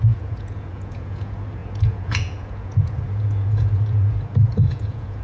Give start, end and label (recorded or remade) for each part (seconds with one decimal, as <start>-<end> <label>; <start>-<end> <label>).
0.0-5.2 remade